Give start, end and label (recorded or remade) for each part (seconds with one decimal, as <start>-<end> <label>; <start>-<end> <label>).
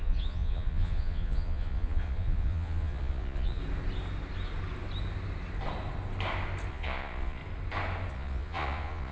0.0-3.6 remade; 3.6-6.7 recorded; 6.7-7.4 remade; 7.4-8.1 recorded; 8.1-9.1 remade